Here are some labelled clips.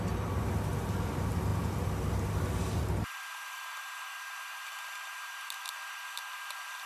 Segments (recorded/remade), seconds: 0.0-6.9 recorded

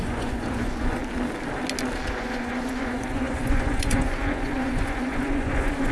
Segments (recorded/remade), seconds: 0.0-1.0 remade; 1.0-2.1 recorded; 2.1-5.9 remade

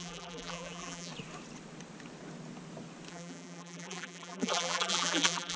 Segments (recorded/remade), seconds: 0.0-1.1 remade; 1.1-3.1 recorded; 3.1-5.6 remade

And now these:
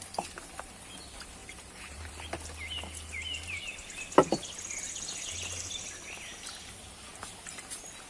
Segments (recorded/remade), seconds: 0.0-1.4 recorded; 1.4-2.1 remade; 2.1-8.1 recorded

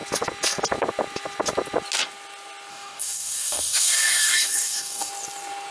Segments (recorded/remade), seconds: 0.0-2.7 recorded; 2.7-5.1 remade; 5.1-5.7 recorded